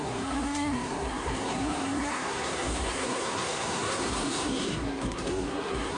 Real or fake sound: fake